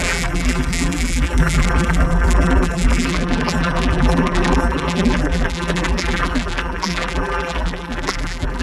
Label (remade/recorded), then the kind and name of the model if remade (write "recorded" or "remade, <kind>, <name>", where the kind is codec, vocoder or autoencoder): remade, vocoder, BigVGAN v2